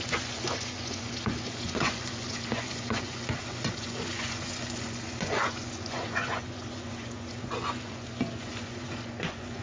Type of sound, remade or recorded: remade